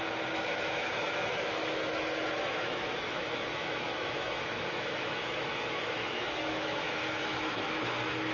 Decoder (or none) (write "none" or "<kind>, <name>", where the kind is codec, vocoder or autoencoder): autoencoder, DAC-VAE